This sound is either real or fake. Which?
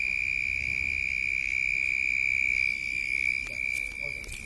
real